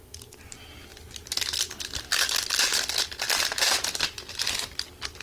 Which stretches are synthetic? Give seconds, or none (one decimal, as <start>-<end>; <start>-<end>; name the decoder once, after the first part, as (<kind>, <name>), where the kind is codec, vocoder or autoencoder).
none